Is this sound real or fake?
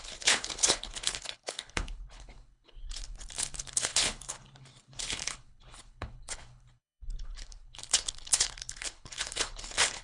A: fake